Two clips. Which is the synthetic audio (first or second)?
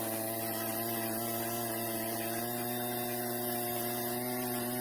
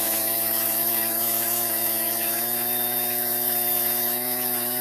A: second